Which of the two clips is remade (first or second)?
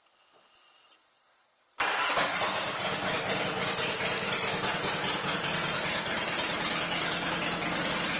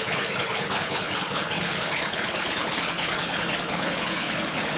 second